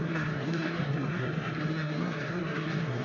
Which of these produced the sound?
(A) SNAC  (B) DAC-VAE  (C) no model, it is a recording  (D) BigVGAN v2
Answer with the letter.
A